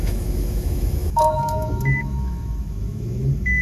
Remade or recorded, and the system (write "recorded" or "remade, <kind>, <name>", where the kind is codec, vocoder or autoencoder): remade, autoencoder, DAC-VAE